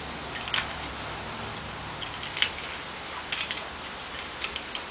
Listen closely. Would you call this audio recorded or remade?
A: recorded